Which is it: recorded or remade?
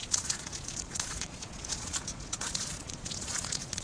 remade